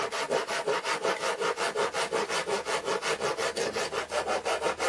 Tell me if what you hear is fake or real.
real